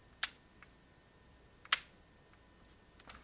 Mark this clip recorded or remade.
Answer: recorded